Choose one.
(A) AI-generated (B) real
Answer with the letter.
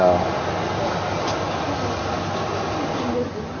B